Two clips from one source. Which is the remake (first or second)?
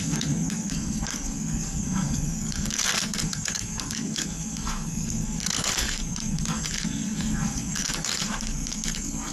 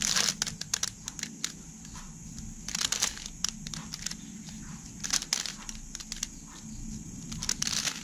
first